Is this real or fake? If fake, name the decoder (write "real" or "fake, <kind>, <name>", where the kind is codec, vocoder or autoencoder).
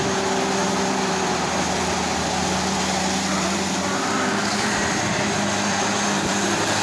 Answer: fake, vocoder, BigVGAN v2